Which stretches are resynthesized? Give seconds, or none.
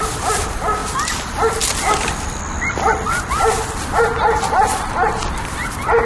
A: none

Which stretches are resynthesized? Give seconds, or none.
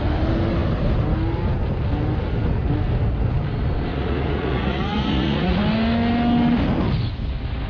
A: 3.9-5.6 (vocoder, Vocos)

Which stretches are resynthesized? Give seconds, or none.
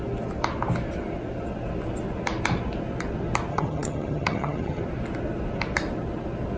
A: 3.5-4.8 (vocoder, HiFi-GAN)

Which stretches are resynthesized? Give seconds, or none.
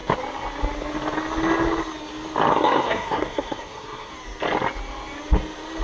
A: 2.5-4.1 (codec, SNAC)